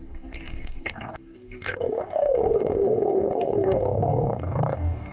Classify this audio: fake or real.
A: fake